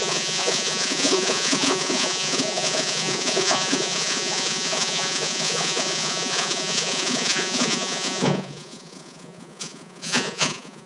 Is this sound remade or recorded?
remade